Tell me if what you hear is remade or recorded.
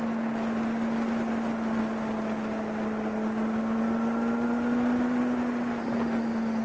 recorded